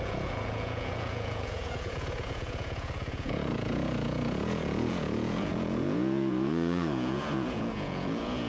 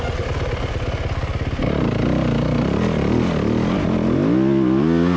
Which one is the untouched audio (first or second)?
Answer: second